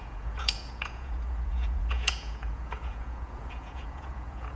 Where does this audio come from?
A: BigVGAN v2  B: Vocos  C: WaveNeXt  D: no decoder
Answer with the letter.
B